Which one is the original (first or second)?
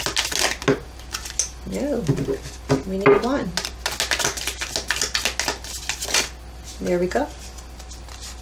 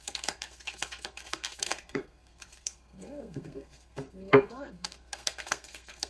first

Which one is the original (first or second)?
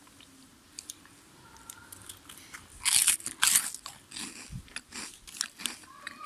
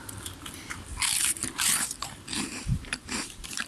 first